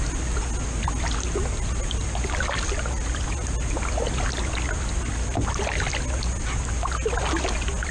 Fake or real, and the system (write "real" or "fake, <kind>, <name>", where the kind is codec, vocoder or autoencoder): real